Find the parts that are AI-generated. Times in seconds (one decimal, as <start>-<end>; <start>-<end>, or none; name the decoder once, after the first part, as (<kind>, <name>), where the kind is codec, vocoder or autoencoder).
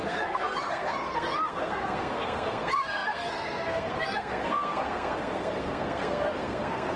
0.0-7.0 (codec, SNAC)